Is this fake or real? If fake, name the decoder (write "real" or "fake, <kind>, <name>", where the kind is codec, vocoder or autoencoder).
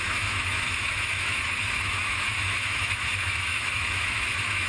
fake, autoencoder, DAC-VAE